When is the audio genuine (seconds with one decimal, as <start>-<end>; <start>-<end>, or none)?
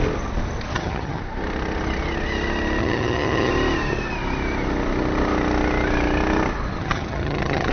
0.0-0.7; 1.2-2.8; 3.5-6.8